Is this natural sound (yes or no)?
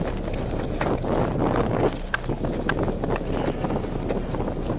yes